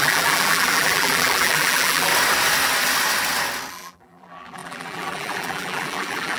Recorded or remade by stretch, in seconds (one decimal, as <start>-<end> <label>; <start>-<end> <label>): 0.0-2.1 remade; 2.1-3.7 recorded; 3.7-6.4 remade